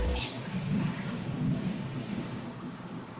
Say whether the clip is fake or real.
fake